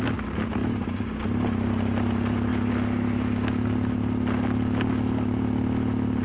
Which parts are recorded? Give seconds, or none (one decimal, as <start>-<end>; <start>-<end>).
0.0-6.2

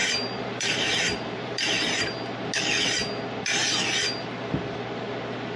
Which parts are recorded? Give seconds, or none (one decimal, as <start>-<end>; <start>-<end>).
1.6-5.6

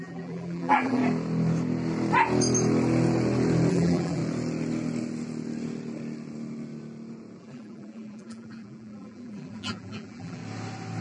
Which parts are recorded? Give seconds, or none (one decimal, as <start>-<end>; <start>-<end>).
1.0-3.7; 4.2-7.4; 10.4-11.0